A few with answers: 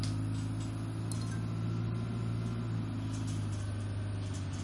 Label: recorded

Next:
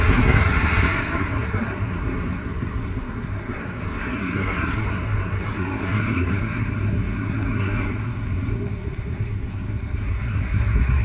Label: remade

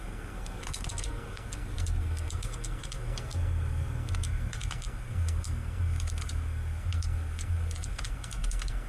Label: remade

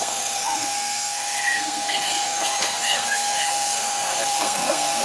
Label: remade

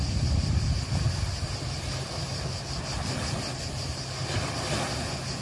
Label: recorded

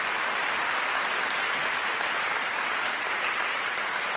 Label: recorded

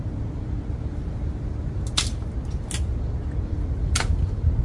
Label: recorded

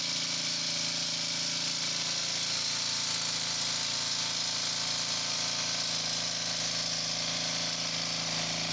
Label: recorded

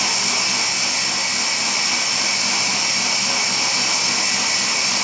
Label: recorded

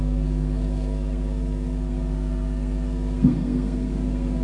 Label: remade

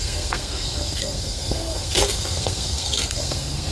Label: remade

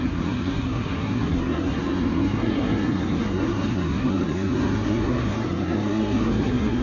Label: remade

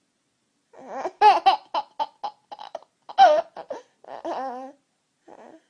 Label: recorded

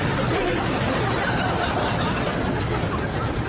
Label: recorded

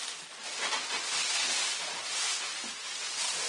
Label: recorded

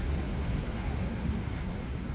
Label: remade